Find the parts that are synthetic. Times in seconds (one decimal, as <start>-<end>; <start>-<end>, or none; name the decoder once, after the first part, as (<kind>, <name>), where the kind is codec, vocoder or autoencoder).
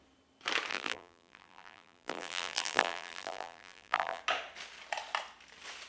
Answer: 0.7-4.2 (vocoder, BigVGAN v2)